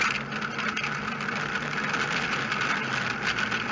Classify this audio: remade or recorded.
recorded